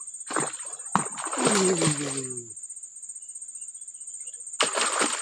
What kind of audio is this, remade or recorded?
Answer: recorded